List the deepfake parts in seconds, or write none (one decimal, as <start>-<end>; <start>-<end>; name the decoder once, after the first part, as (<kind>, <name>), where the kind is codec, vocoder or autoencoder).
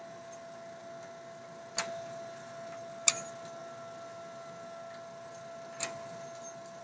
none